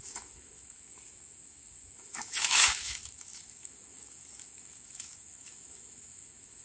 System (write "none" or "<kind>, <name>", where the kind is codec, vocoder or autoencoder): autoencoder, DAC-VAE